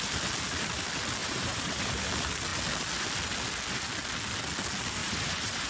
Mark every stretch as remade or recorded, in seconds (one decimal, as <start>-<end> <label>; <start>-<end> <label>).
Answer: 0.0-1.2 recorded; 1.2-2.0 remade; 2.0-5.0 recorded; 5.0-5.7 remade